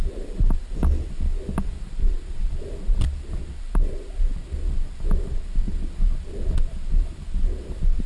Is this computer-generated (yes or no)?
no